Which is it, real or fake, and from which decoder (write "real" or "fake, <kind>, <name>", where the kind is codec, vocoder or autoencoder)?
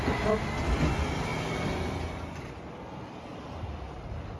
real